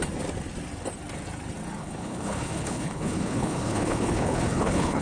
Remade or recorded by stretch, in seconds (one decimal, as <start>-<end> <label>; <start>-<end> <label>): 0.0-1.8 recorded; 1.8-5.0 remade